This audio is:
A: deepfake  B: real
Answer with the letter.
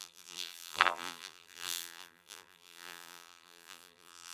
A